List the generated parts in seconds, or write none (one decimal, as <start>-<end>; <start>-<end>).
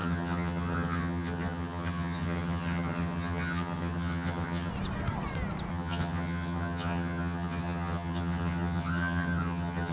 0.0-4.7; 5.7-9.9